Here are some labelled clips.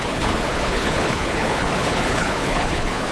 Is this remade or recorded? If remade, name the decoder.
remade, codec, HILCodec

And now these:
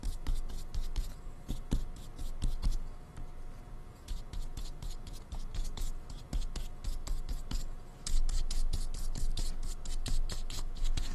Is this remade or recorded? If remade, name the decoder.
recorded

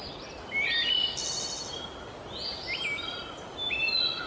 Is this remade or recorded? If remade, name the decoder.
recorded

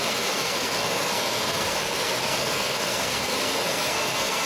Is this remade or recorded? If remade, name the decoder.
remade, codec, SNAC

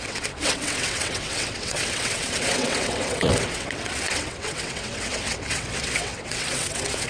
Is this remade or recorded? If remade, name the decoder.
remade, vocoder, WaveNeXt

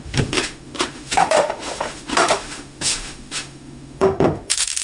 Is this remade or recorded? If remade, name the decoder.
remade, autoencoder, DAC-VAE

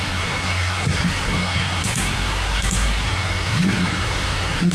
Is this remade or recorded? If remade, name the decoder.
remade, codec, SNAC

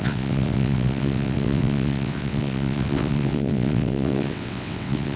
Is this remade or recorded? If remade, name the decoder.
remade, vocoder, WaveNeXt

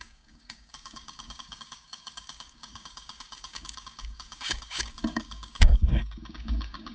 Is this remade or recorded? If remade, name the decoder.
remade, codec, DAC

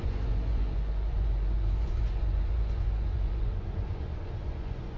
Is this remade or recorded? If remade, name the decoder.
remade, vocoder, Vocos